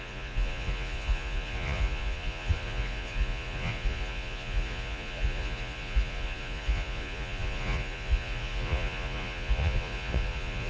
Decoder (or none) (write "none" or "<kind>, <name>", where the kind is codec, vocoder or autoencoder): vocoder, Vocos